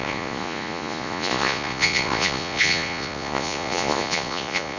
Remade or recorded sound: remade